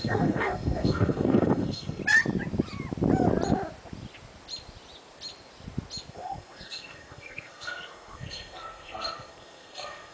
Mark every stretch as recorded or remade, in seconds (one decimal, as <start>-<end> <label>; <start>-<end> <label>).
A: 0.0-2.0 remade; 2.0-6.1 recorded; 6.1-10.1 remade